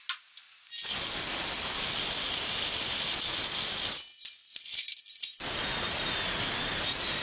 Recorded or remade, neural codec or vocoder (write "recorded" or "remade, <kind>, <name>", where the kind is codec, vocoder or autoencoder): recorded